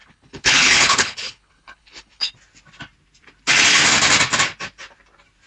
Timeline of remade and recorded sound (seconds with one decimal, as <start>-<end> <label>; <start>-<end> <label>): 0.0-2.3 remade; 2.3-5.5 recorded